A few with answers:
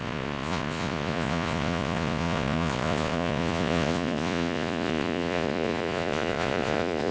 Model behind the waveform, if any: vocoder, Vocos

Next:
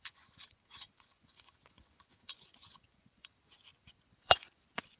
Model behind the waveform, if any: vocoder, Vocos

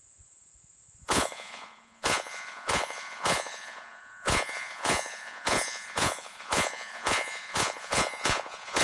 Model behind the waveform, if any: vocoder, Vocos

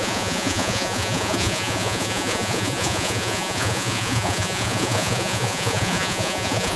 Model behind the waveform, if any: vocoder, Vocos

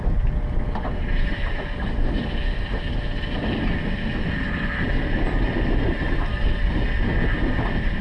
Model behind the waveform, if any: none